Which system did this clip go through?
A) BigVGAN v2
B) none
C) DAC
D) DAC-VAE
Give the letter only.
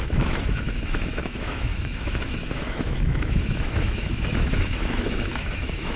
D